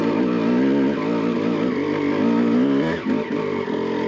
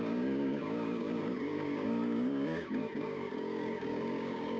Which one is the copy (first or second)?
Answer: second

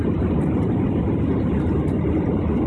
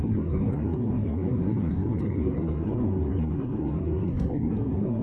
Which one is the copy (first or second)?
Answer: second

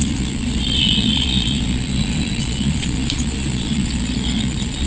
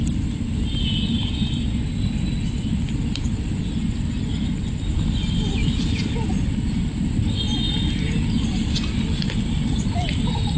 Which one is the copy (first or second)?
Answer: first